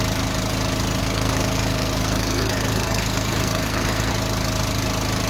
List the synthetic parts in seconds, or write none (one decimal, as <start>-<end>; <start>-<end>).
1.0-4.1